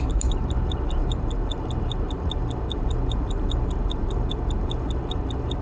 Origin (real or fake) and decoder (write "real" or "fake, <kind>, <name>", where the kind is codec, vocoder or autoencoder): fake, vocoder, BigVGAN v2